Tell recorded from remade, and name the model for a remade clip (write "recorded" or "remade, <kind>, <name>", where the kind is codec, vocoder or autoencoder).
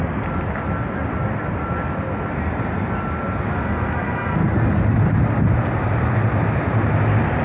recorded